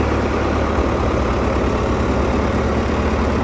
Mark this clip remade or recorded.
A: recorded